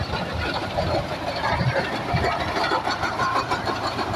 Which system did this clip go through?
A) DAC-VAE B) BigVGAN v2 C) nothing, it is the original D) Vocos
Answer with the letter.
B